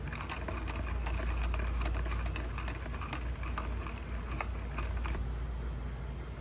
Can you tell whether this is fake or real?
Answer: real